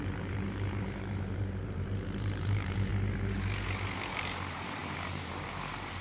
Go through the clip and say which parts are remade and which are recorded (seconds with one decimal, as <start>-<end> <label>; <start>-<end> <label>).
0.0-2.9 remade; 2.9-4.1 recorded; 4.1-6.0 remade